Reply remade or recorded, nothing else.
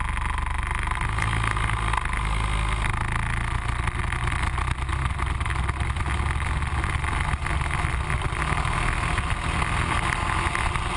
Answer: recorded